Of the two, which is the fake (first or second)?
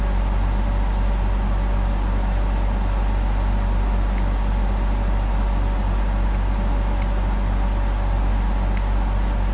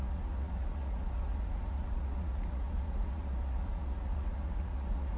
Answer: second